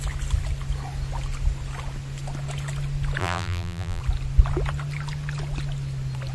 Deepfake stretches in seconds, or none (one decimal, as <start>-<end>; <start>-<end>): 3.2-4.0